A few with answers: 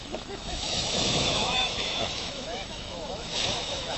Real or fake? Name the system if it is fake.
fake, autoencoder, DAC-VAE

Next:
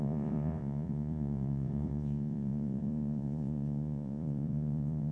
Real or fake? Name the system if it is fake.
fake, vocoder, Vocos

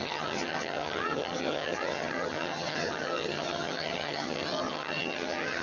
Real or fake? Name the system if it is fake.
fake, vocoder, HiFi-GAN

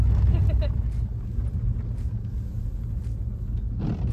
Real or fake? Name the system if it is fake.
real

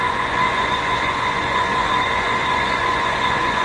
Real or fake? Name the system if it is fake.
fake, vocoder, Vocos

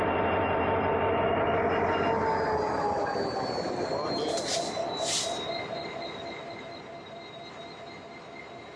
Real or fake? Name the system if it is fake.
real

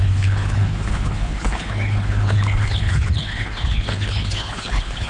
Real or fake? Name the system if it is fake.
fake, codec, HILCodec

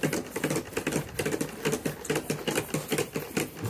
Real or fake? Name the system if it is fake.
real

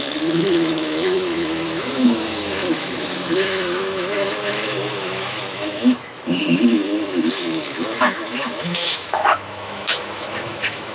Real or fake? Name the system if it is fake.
fake, autoencoder, DAC-VAE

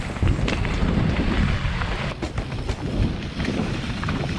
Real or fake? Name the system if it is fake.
real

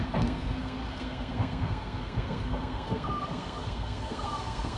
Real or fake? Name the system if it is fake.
fake, codec, SNAC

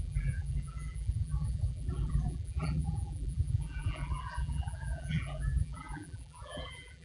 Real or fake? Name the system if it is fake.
fake, vocoder, BigVGAN v2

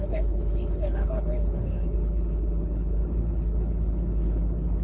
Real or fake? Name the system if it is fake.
fake, codec, HILCodec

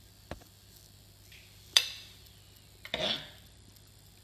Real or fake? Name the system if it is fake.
real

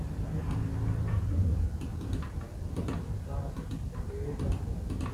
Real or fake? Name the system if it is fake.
real